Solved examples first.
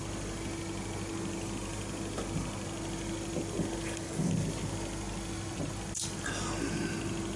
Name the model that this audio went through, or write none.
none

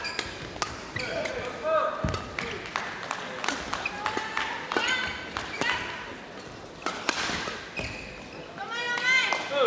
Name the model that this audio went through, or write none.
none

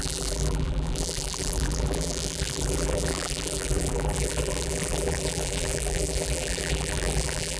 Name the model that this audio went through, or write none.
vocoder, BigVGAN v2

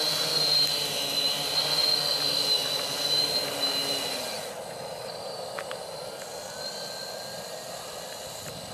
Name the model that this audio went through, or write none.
none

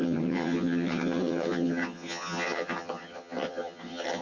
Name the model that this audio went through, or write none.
vocoder, HiFi-GAN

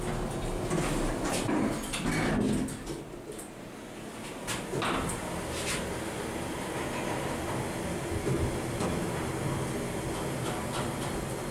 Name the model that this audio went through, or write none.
none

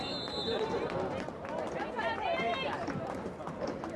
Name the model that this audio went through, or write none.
none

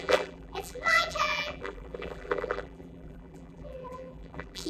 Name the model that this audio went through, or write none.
vocoder, BigVGAN v2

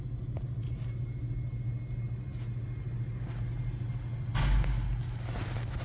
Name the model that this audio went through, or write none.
none